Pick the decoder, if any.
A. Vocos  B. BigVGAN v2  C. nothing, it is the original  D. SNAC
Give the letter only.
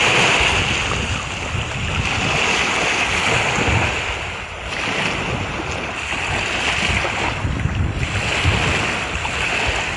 C